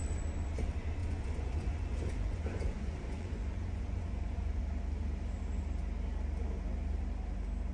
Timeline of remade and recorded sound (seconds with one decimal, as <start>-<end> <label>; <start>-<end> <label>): 0.0-1.0 recorded; 1.0-4.6 remade; 4.6-7.7 recorded